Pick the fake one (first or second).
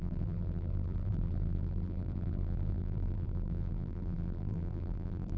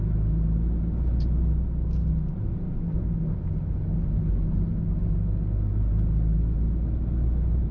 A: first